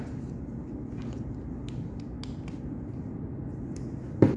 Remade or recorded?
recorded